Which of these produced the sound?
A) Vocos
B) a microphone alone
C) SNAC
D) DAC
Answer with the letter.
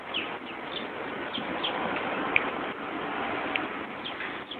B